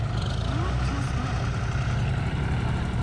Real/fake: real